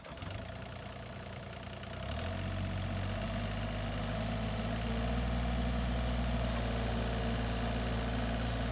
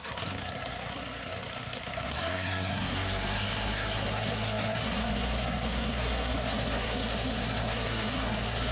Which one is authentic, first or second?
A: first